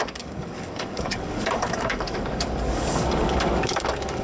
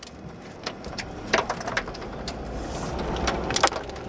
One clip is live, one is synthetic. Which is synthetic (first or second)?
first